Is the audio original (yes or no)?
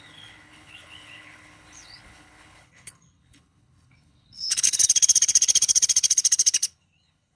no